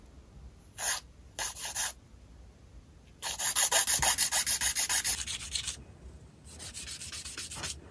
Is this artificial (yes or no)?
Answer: no